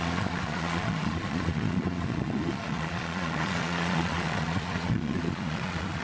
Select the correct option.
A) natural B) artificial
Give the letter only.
B